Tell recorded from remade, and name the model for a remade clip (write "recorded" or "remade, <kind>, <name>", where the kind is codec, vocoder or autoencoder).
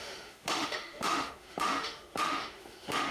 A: remade, autoencoder, DAC-VAE